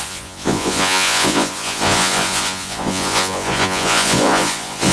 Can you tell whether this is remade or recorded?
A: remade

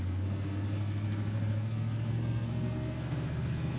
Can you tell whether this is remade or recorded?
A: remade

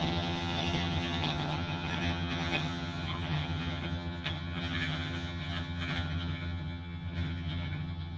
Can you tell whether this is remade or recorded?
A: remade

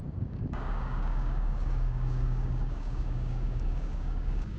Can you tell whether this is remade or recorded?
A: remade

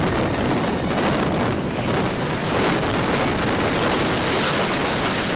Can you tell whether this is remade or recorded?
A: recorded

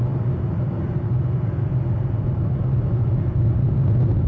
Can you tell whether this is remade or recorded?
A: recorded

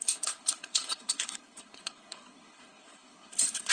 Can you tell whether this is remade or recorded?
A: remade